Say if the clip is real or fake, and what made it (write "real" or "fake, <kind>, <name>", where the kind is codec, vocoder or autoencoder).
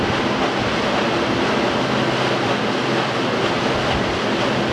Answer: real